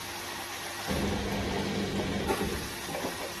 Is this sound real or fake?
real